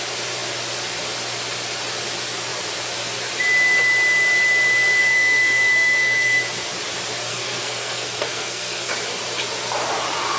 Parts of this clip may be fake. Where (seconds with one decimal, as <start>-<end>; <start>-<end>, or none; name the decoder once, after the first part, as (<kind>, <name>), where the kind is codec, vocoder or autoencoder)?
5.0-6.4 (codec, SNAC); 7.3-8.9